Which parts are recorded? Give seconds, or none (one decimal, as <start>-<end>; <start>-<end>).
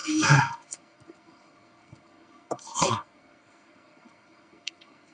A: none